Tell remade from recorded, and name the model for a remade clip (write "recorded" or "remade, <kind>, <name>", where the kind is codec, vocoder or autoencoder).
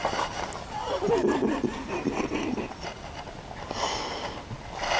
recorded